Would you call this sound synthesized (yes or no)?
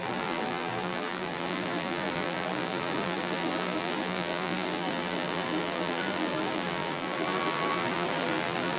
yes